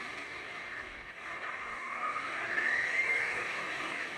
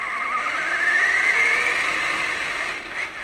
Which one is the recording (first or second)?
second